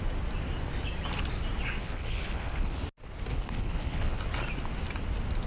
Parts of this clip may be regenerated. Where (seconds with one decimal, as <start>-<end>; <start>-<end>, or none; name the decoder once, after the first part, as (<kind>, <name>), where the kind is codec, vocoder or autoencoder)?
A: 1.8-2.8 (codec, HILCodec); 3.3-4.2